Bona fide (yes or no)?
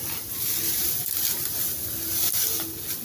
yes